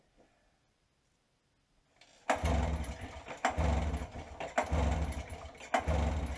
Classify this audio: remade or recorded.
recorded